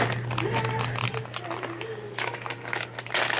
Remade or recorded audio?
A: remade